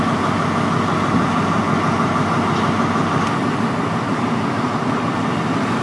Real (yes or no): yes